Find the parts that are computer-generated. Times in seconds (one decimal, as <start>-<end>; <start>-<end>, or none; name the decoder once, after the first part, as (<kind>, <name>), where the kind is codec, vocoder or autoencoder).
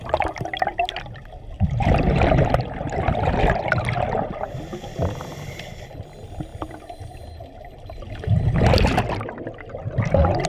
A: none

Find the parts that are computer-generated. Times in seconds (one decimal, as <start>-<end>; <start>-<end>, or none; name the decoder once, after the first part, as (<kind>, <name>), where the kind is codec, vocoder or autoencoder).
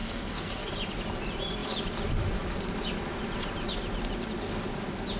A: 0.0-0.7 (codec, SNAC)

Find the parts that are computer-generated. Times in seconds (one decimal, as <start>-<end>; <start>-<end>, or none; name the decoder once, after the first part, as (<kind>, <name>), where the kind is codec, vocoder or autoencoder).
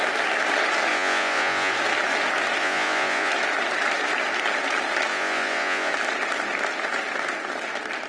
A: 0.9-1.7 (vocoder, Vocos); 2.6-3.3; 5.1-5.9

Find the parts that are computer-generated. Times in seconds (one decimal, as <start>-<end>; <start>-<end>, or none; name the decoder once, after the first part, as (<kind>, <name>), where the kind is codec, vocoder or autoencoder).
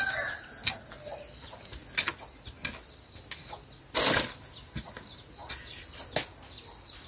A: none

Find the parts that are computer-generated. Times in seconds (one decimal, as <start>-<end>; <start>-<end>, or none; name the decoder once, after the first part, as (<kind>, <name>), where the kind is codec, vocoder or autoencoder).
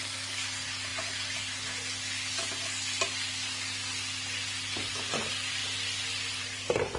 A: none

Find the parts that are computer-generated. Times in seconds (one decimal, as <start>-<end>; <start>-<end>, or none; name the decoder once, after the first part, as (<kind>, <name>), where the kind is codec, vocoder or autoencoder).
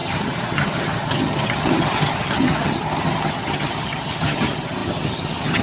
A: 0.0-5.6 (vocoder, HiFi-GAN)